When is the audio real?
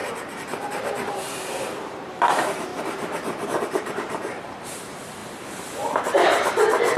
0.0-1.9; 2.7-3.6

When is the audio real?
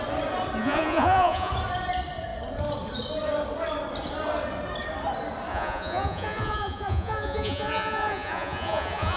0.0-0.6; 1.5-5.5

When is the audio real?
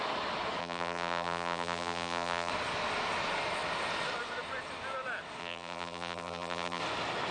0.0-0.6; 2.5-5.4; 6.8-7.3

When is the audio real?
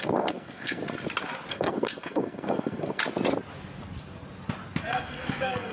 0.8-1.5; 3.0-4.8